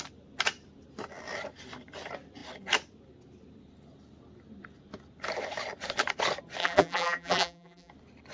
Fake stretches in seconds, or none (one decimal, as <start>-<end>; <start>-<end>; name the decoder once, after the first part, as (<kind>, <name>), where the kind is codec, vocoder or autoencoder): 6.6-7.9 (vocoder, BigVGAN v2)